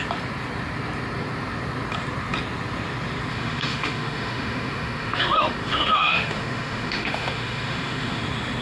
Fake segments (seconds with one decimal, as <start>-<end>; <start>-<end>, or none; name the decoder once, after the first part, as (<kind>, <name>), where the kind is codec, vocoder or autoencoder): 3.3-8.2 (autoencoder, DAC-VAE)

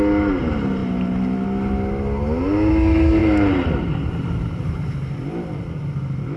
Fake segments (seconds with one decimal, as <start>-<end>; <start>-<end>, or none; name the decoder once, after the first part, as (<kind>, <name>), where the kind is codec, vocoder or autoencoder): 3.2-4.9 (vocoder, BigVGAN v2)